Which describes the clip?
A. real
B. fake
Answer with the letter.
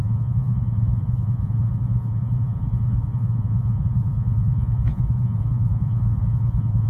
B